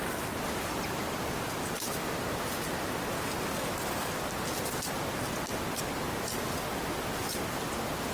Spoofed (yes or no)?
no